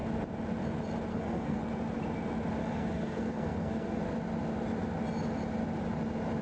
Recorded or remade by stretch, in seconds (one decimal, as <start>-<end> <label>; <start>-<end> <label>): 0.0-1.1 recorded; 1.1-1.6 remade; 1.6-2.6 recorded; 2.6-4.0 remade; 4.0-6.4 recorded